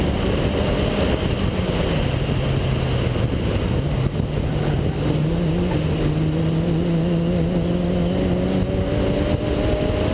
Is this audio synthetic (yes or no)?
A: no